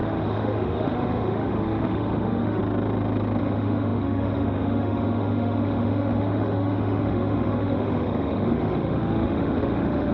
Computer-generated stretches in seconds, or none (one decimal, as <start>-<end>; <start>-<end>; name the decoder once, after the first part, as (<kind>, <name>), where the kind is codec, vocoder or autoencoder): 0.0-2.6 (autoencoder, DAC-VAE); 3.4-10.1